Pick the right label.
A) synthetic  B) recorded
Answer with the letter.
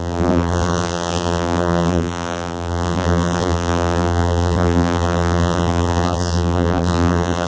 A